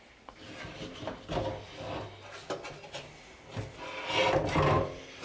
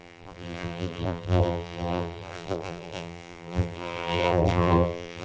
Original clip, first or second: first